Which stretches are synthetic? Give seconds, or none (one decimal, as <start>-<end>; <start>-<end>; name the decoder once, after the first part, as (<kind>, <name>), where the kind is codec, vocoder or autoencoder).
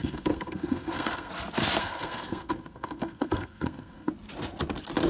0.0-1.3 (codec, SNAC); 1.8-4.1